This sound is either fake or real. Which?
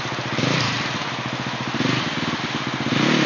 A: real